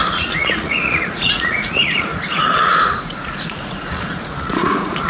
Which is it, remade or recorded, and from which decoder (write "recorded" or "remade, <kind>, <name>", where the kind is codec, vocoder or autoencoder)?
remade, vocoder, Vocos